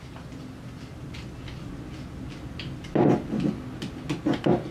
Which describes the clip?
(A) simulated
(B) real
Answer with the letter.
B